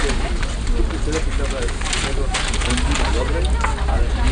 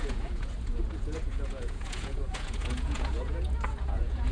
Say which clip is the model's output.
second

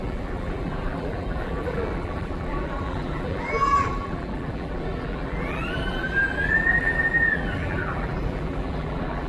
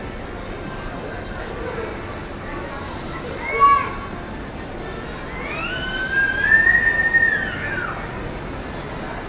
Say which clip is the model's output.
first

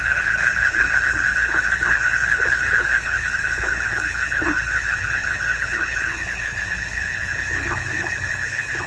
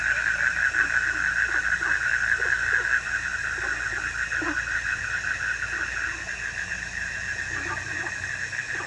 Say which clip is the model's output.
first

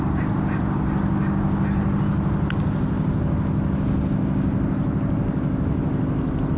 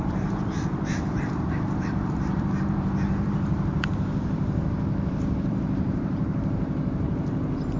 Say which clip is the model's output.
second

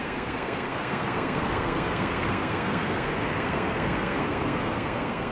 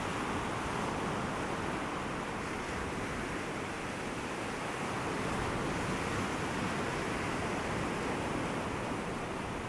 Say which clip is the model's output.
first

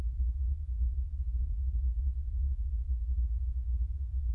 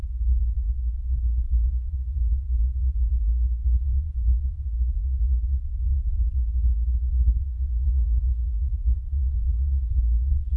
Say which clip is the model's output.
second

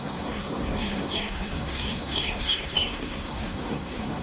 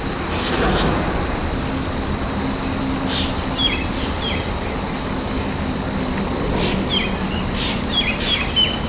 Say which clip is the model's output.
first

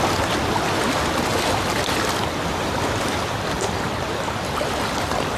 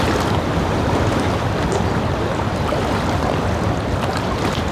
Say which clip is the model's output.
first